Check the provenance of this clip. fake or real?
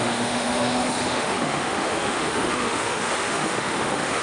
fake